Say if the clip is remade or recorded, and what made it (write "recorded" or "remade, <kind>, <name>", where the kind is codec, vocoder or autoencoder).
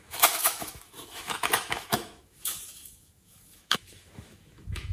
remade, autoencoder, DAC-VAE